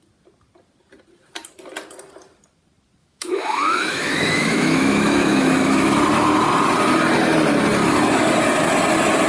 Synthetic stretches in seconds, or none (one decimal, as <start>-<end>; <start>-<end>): 3.0-6.0